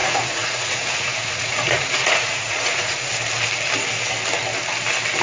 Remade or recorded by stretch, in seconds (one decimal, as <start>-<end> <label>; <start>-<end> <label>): 0.0-3.1 remade; 3.1-5.2 recorded